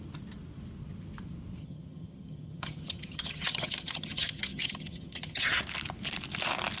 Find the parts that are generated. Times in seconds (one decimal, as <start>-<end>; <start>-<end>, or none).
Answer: 1.6-5.6